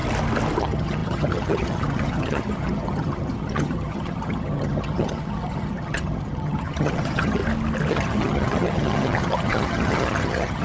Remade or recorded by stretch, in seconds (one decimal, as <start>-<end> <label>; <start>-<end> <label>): 0.0-0.6 recorded; 0.6-7.4 remade; 7.4-7.9 recorded; 7.9-10.6 remade